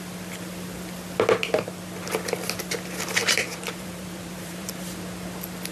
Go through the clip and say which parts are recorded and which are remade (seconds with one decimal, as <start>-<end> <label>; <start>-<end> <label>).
0.0-3.2 recorded; 3.2-4.7 remade; 4.7-5.7 recorded